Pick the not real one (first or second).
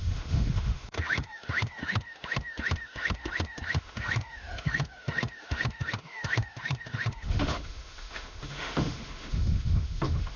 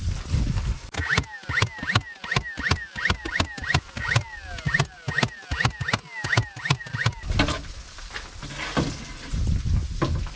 first